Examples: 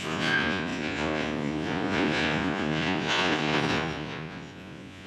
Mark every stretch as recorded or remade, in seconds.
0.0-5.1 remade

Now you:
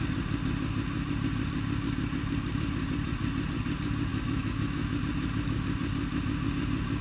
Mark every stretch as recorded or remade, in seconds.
0.0-4.1 recorded; 4.1-5.0 remade; 5.0-7.0 recorded

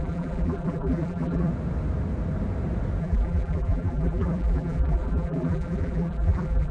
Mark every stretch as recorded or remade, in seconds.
0.0-1.5 remade; 1.5-3.0 recorded; 3.0-6.7 remade

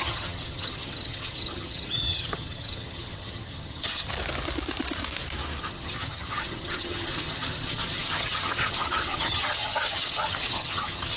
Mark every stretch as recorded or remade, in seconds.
0.0-4.1 remade; 4.1-5.6 recorded; 5.6-11.2 remade

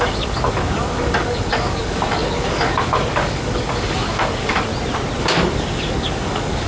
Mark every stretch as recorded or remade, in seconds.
0.0-4.7 remade; 4.7-5.2 recorded; 5.2-6.7 remade

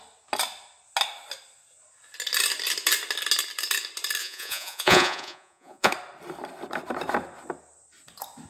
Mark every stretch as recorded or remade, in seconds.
0.0-4.2 recorded; 4.2-5.9 remade; 5.9-8.5 recorded